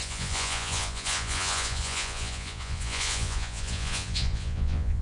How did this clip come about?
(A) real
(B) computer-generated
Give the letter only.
B